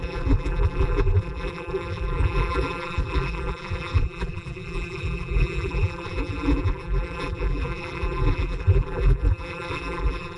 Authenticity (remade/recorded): remade